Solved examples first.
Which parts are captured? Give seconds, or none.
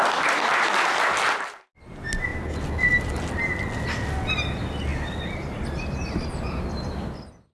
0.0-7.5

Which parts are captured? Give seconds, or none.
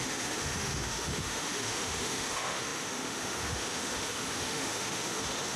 none